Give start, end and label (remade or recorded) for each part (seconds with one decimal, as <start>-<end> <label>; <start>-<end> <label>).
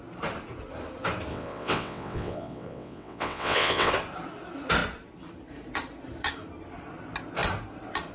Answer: 0.0-1.3 recorded; 1.3-3.9 remade; 3.9-8.1 recorded